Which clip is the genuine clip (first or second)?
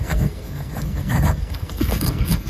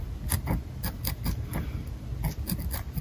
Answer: second